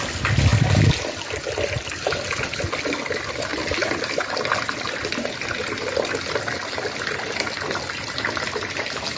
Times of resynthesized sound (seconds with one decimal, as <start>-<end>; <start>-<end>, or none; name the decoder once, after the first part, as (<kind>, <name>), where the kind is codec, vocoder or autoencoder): none